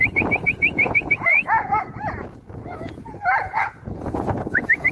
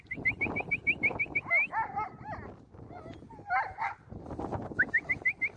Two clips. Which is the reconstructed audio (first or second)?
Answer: first